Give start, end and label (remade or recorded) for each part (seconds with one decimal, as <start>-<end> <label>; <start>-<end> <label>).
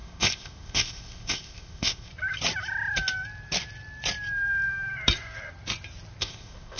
0.0-2.1 remade; 2.1-6.2 recorded; 6.2-6.8 remade